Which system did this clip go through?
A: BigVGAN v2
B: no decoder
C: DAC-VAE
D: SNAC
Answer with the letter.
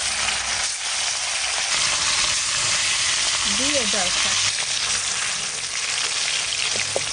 B